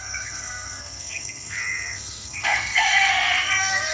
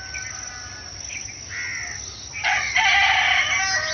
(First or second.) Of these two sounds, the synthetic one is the first